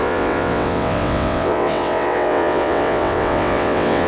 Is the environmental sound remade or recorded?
remade